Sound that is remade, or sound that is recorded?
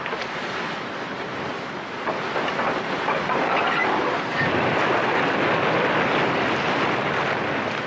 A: recorded